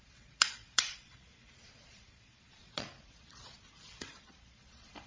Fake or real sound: fake